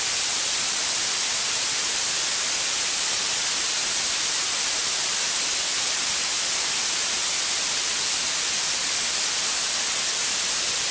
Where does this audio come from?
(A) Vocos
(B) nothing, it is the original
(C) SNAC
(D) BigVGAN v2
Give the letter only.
B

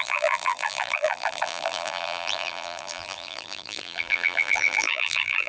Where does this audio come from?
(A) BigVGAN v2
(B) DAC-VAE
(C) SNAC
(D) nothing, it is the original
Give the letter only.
A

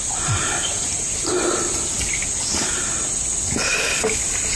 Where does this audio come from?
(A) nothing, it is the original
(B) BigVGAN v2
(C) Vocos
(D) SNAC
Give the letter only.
A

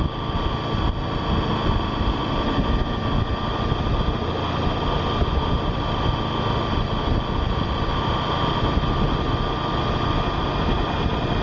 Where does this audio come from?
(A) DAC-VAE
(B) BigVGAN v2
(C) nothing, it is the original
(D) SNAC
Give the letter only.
C